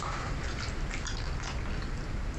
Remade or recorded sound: recorded